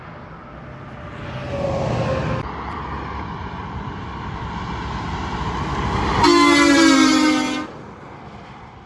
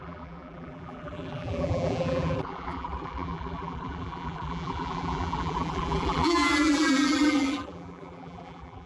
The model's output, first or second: second